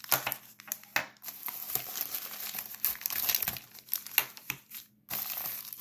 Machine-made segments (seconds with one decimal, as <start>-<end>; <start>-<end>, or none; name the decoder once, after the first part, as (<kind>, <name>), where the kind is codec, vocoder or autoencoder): 4.2-4.9 (vocoder, BigVGAN v2)